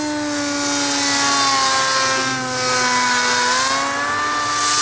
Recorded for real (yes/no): yes